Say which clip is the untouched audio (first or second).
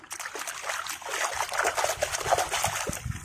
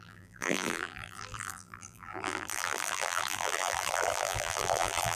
first